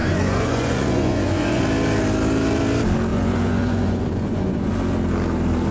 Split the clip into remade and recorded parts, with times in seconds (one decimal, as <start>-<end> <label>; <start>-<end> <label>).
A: 0.0-1.6 remade; 1.6-3.1 recorded; 3.1-4.7 remade; 4.7-5.7 recorded